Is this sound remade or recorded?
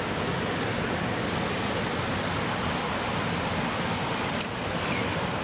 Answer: recorded